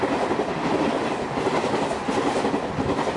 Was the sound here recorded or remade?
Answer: recorded